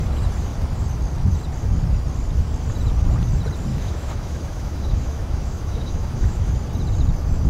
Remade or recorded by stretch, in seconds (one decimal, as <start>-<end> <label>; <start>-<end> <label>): 0.0-3.7 recorded; 3.7-6.5 remade; 6.5-7.5 recorded